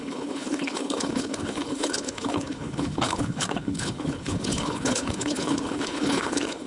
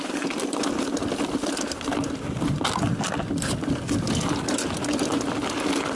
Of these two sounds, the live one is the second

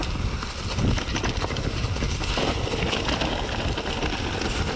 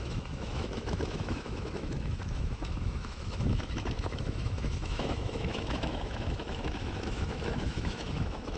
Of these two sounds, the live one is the first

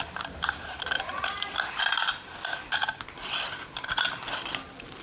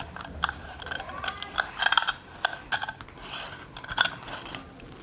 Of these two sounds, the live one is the second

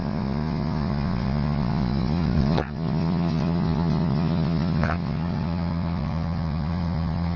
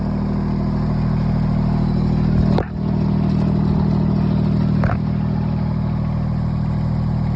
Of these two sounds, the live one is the second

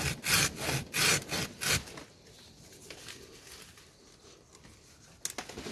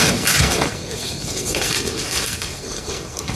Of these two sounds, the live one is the first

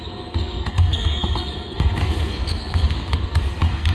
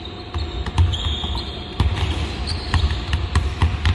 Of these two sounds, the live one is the second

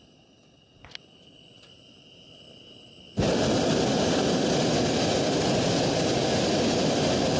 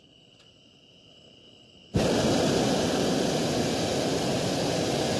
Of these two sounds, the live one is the first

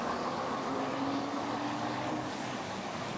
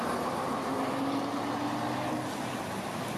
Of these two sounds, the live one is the second